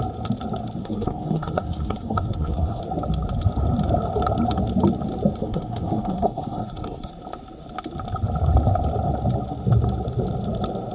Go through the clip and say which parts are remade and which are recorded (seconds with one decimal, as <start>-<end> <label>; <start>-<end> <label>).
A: 0.0-0.8 recorded; 0.8-2.8 remade; 2.8-5.4 recorded; 5.4-7.1 remade; 7.1-10.9 recorded